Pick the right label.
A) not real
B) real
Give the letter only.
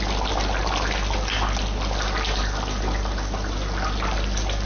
B